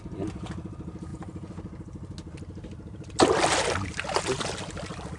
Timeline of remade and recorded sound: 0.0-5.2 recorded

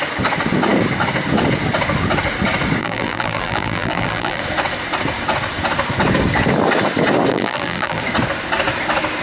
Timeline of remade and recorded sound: 0.0-2.8 recorded; 2.8-4.4 remade; 4.4-7.3 recorded; 7.3-8.0 remade; 8.0-9.2 recorded

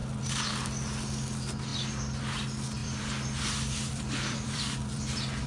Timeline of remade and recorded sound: 0.0-0.6 remade; 0.6-2.8 recorded; 2.8-5.1 remade; 5.1-5.5 recorded

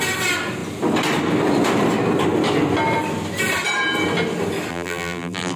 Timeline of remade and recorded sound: 0.0-4.7 recorded; 4.7-5.6 remade

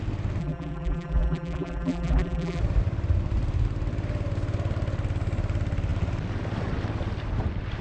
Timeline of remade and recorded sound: 0.0-0.4 recorded; 0.4-2.6 remade; 2.6-7.8 recorded

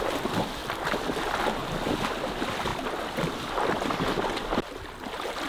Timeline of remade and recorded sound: 0.0-5.5 recorded

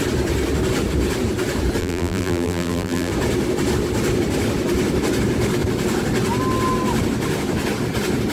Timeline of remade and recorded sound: 0.0-1.8 recorded; 1.8-3.1 remade; 3.1-8.3 recorded

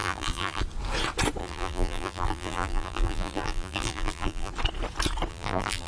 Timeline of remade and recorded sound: 0.0-0.6 remade; 0.6-1.4 recorded; 1.4-4.5 remade; 4.5-5.3 recorded; 5.3-5.9 remade